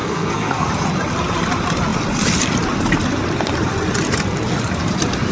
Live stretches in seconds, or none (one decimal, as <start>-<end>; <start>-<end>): 0.7-5.3